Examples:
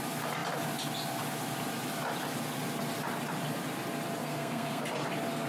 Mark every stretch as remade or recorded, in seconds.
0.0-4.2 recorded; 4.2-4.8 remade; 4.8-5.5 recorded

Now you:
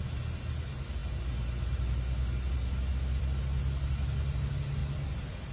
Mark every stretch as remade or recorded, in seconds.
0.0-5.5 recorded

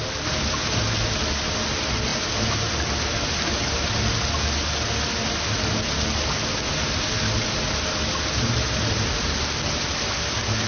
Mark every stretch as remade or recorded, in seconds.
0.0-10.7 recorded

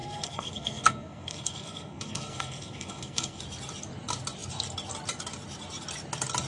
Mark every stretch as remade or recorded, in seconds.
0.0-3.4 remade; 3.4-6.5 recorded

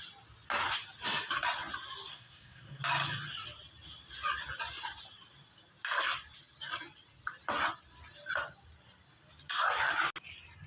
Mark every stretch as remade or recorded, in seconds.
0.0-2.1 recorded; 2.1-2.8 remade; 2.8-10.7 recorded

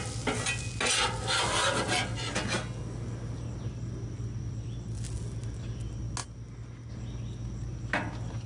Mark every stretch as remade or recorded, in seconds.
0.0-8.5 recorded